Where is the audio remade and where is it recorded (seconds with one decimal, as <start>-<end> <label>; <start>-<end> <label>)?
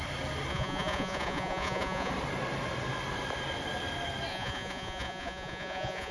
0.0-0.5 recorded; 0.5-2.1 remade; 2.1-4.3 recorded; 4.3-6.1 remade